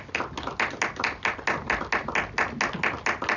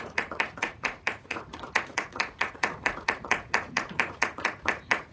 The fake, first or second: second